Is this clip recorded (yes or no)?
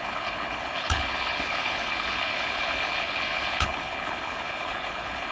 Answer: no